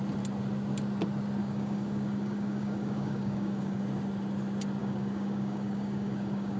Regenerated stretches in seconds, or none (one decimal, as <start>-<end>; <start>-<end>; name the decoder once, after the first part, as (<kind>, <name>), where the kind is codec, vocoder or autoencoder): 1.4-3.8 (codec, DAC); 4.8-6.6

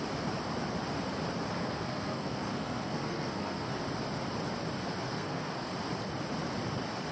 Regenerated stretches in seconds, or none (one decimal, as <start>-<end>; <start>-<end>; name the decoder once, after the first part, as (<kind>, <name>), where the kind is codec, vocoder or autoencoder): 1.6-3.7 (codec, SNAC); 5.1-5.7